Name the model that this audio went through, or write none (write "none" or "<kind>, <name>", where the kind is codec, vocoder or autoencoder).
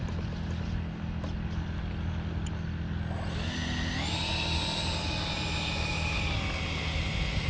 none